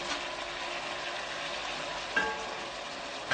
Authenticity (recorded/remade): recorded